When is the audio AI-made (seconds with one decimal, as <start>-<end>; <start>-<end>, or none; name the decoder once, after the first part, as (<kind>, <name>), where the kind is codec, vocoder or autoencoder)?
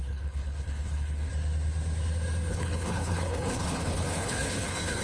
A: 0.0-1.3 (codec, HILCodec); 2.5-5.0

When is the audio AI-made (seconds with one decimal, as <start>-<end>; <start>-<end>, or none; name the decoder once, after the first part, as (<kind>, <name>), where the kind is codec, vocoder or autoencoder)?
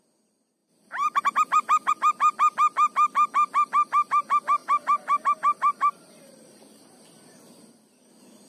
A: 0.6-1.9 (vocoder, BigVGAN v2); 4.6-7.0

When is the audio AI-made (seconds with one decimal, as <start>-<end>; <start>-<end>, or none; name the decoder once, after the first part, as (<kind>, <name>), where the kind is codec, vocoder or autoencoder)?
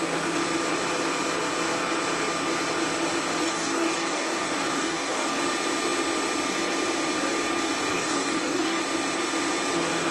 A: 3.4-5.4 (codec, DAC); 7.9-8.8